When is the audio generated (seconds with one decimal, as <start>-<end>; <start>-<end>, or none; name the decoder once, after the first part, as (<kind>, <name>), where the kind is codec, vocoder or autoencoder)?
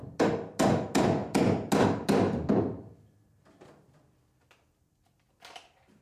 none